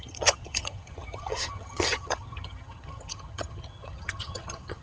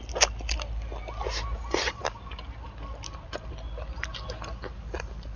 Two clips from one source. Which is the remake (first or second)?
first